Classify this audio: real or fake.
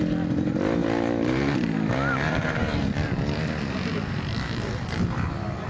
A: real